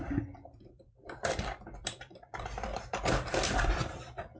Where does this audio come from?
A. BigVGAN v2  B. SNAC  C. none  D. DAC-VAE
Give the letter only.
A